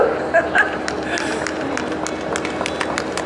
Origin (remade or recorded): recorded